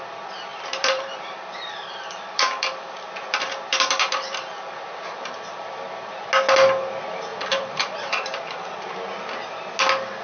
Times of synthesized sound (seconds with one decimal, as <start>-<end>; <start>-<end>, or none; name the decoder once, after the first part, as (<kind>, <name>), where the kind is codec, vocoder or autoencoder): 0.5-5.7 (vocoder, BigVGAN v2); 7.3-8.4